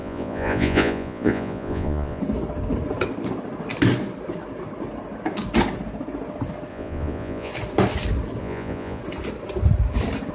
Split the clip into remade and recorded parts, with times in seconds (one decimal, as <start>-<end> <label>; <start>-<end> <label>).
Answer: 0.0-2.2 remade; 2.2-6.7 recorded; 6.7-7.5 remade; 7.5-8.4 recorded; 8.4-9.0 remade; 9.0-10.3 recorded